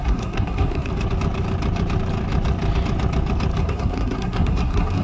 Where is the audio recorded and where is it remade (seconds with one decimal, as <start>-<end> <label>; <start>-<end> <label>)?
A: 0.0-0.9 remade; 0.9-3.6 recorded; 3.6-5.0 remade